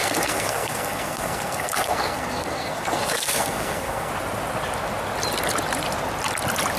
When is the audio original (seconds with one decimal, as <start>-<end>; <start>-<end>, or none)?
4.1-6.8